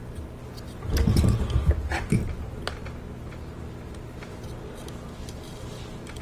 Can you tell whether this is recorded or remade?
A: recorded